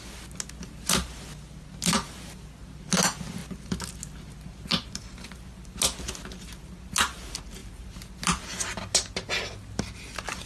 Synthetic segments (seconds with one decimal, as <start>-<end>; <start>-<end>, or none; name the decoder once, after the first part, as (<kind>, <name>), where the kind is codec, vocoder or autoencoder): none

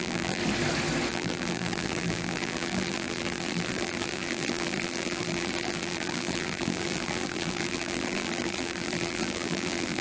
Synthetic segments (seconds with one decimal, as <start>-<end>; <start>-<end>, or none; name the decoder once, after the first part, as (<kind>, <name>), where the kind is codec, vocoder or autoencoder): 0.0-0.4 (vocoder, BigVGAN v2); 1.1-10.0

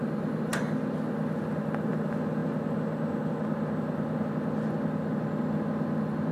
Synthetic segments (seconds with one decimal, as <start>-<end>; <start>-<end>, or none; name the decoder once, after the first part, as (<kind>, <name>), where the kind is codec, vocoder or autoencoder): none

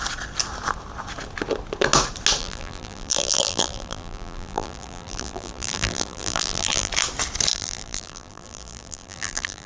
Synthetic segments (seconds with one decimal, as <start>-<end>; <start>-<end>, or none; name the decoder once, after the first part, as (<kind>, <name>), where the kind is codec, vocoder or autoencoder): 2.4-6.9 (vocoder, BigVGAN v2); 7.5-9.7

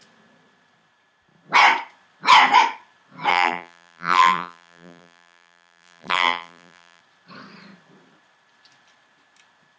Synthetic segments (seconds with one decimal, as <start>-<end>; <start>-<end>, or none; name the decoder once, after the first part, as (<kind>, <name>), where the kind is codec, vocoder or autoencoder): 3.3-7.0 (vocoder, BigVGAN v2)

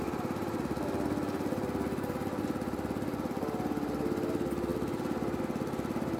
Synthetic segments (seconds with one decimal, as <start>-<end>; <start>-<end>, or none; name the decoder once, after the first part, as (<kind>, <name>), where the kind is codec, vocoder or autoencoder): none

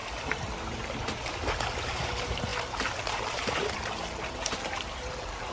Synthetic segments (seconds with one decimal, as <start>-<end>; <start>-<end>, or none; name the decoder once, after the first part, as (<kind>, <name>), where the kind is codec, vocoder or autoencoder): 1.9-5.5 (vocoder, BigVGAN v2)